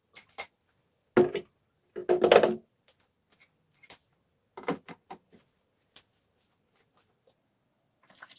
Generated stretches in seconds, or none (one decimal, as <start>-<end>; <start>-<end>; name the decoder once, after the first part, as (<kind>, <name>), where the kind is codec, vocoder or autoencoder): none